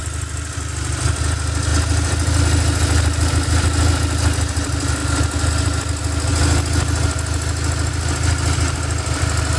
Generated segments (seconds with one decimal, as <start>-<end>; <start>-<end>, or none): none